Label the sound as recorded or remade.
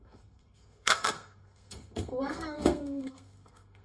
remade